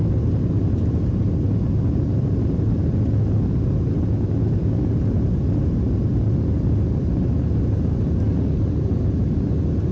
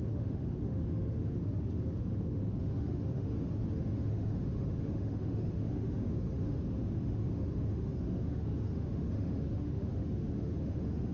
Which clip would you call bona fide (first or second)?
first